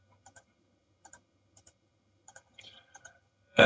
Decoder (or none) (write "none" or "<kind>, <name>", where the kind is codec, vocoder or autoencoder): vocoder, HiFi-GAN